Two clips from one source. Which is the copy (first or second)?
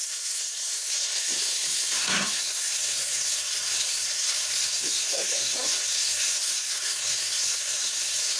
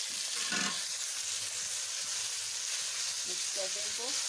first